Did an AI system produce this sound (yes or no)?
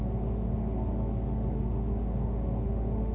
yes